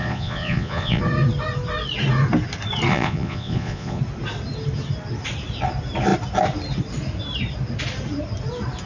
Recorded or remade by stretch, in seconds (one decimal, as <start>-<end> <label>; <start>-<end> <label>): 0.0-1.0 remade; 1.0-2.9 recorded; 2.9-4.0 remade; 4.0-8.9 recorded